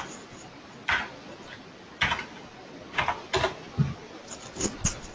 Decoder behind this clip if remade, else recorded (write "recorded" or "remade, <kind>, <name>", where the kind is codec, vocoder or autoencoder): recorded